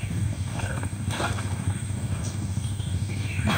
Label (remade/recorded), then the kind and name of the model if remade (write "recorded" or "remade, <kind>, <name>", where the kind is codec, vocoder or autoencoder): remade, codec, DAC